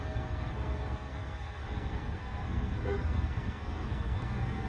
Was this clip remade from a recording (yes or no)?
yes